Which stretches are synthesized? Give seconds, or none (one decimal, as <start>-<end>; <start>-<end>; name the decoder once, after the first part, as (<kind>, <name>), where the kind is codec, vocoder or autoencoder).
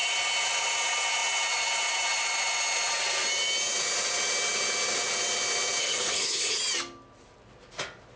5.8-6.6 (codec, HILCodec)